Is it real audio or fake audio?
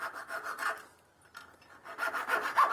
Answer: real